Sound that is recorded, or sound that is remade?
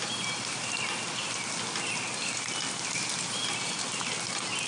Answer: recorded